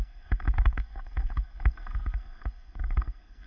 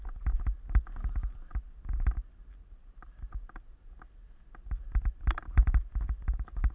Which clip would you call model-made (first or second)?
first